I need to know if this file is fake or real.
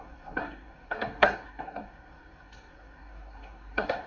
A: fake